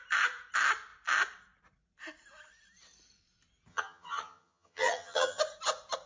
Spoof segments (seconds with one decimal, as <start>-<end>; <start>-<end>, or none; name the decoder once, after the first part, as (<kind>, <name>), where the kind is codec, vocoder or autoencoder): 3.7-5.4 (vocoder, HiFi-GAN)